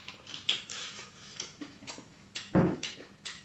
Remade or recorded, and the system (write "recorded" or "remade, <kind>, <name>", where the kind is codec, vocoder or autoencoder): remade, autoencoder, DAC-VAE